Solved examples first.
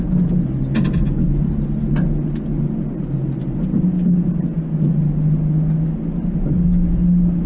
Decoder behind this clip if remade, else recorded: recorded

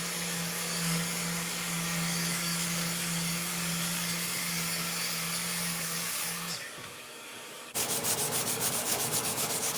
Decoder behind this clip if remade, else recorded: remade, codec, DAC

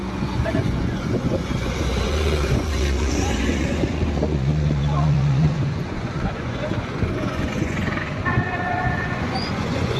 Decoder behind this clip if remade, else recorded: remade, vocoder, Vocos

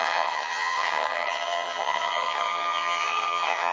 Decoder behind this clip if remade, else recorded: remade, vocoder, HiFi-GAN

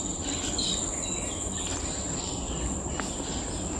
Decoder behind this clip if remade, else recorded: recorded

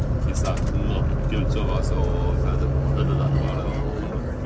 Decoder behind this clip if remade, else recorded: recorded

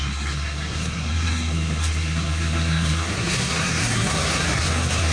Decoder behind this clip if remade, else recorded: remade, codec, SNAC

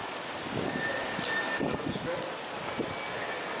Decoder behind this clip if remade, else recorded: recorded